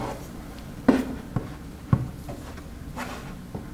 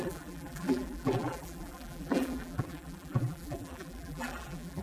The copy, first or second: second